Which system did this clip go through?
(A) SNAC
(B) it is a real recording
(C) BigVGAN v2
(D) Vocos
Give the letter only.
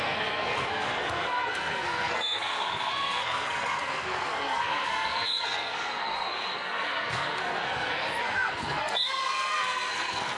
A